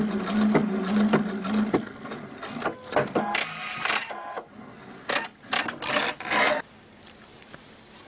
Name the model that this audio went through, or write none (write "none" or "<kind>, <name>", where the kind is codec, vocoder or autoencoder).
none